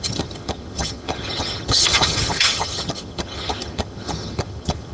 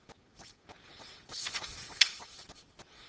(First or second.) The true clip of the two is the second